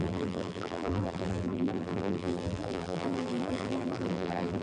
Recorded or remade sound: remade